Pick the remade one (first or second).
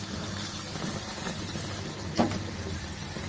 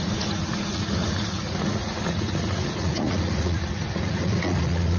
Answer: second